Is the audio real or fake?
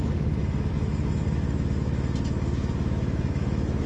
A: fake